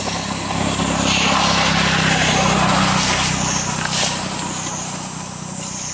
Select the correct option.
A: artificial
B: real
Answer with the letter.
B